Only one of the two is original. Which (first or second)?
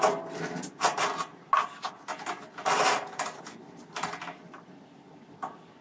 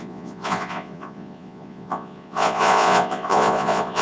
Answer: first